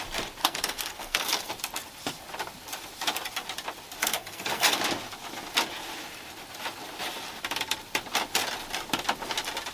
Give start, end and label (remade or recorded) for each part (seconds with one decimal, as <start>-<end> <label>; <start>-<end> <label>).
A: 0.0-0.4 recorded; 0.4-1.5 remade; 1.5-4.0 recorded; 4.0-4.8 remade; 4.8-9.7 recorded